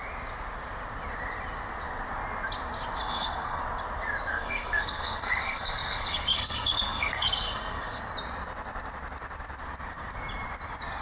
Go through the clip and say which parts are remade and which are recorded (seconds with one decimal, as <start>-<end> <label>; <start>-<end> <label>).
0.0-3.0 recorded; 3.0-3.6 remade; 3.6-4.3 recorded; 4.3-8.0 remade; 8.0-11.0 recorded